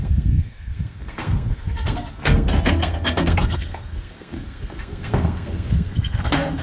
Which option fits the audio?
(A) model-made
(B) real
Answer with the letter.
A